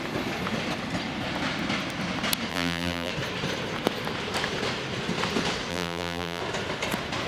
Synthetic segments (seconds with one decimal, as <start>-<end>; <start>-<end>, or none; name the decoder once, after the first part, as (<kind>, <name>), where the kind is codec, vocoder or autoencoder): 2.5-3.1 (vocoder, BigVGAN v2); 5.7-6.4